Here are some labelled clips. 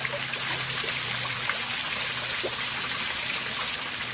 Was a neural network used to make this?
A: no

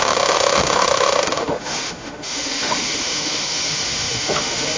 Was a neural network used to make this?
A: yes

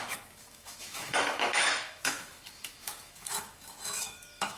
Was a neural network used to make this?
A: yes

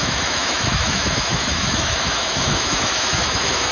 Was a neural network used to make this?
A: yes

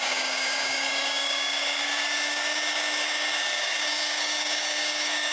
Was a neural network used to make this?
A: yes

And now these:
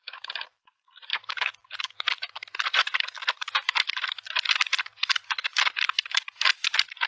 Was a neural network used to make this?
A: yes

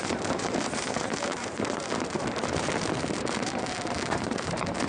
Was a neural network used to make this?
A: yes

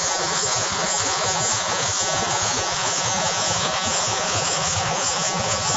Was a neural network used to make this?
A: yes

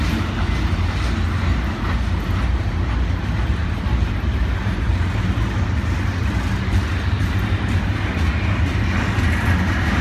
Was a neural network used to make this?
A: no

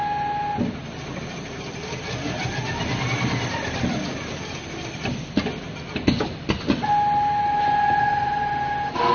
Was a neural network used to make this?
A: no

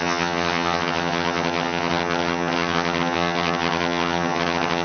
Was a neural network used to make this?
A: yes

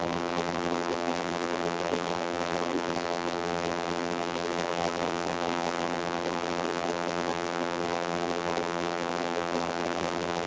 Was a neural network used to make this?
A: yes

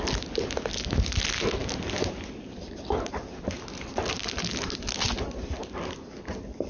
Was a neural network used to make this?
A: no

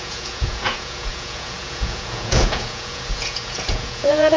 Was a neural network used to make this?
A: yes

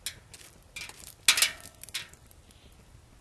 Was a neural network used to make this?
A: no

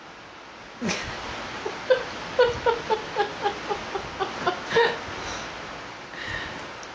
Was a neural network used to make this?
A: no